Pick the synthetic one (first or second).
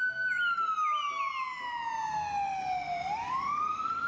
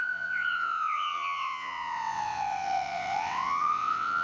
second